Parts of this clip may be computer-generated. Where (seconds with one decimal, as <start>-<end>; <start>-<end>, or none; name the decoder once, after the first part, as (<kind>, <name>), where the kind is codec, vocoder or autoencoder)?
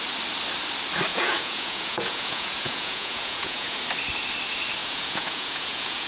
1.1-3.8 (vocoder, Vocos); 4.8-6.1